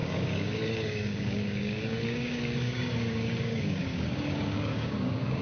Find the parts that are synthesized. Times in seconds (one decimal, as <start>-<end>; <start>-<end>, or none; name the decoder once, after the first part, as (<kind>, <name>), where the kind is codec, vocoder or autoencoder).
0.0-5.4 (codec, DAC)